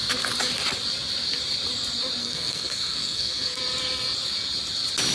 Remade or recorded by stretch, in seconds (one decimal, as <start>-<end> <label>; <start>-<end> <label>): 0.0-2.2 recorded; 2.2-3.6 remade; 3.6-5.1 recorded